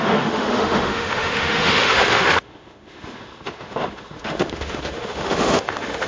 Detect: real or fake fake